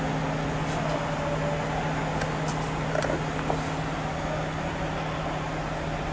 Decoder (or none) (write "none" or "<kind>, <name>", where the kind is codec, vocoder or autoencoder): none